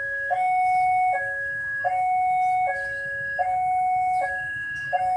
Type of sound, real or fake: fake